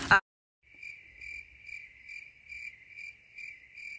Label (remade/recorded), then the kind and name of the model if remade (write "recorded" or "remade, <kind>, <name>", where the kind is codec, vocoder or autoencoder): recorded